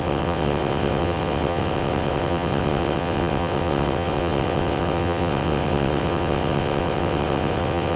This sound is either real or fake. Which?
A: fake